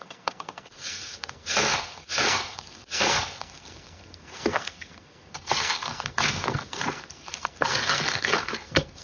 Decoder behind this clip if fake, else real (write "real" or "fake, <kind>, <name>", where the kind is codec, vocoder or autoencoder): fake, codec, SNAC